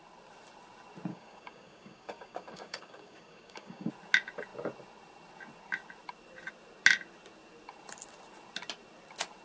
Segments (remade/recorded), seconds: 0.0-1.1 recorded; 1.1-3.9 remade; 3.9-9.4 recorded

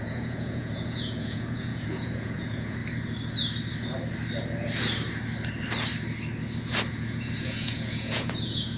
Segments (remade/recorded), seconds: 0.0-2.8 remade; 2.8-6.9 recorded; 6.9-8.8 remade

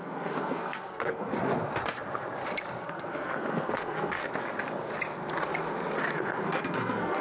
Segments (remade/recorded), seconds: 0.0-1.3 remade; 1.3-2.8 recorded; 2.8-4.2 remade; 4.2-6.1 recorded; 6.1-7.2 remade

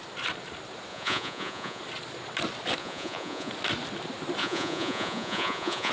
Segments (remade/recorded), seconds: 0.0-0.9 recorded; 0.9-1.8 remade; 1.8-2.8 recorded; 2.8-3.5 remade; 3.5-4.4 recorded; 4.4-5.9 remade

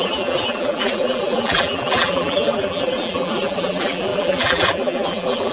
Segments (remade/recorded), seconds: 0.0-5.5 remade

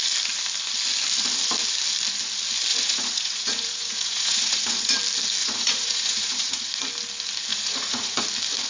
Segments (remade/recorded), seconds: 0.0-2.7 recorded; 2.7-5.0 remade; 5.0-5.4 recorded; 5.4-6.8 remade; 6.8-7.5 recorded; 7.5-8.2 remade; 8.2-8.7 recorded

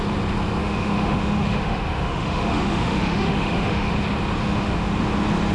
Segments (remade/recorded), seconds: 0.0-0.6 recorded; 0.6-3.9 remade; 3.9-4.4 recorded; 4.4-5.0 remade; 5.0-5.5 recorded

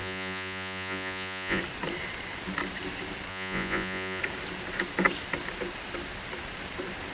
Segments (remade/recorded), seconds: 0.0-1.6 remade; 1.6-3.3 recorded; 3.3-4.2 remade; 4.2-7.1 recorded